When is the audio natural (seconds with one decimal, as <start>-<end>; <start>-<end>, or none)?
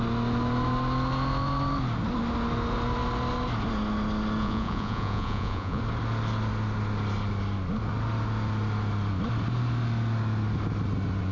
0.0-4.4; 5.8-11.3